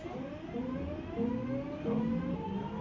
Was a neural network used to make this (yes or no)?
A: no